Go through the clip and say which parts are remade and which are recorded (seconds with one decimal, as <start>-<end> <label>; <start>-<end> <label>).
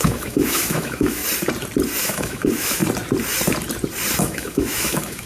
0.0-1.2 remade; 1.2-2.0 recorded; 2.0-2.8 remade; 2.8-4.2 recorded; 4.2-5.3 remade